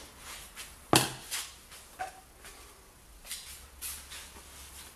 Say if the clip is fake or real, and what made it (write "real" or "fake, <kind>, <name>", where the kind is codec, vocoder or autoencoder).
real